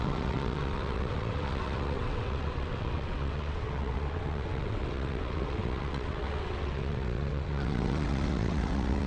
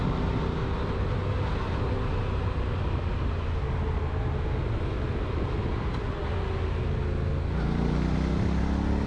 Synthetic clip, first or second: first